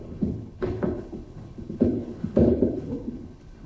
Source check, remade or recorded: remade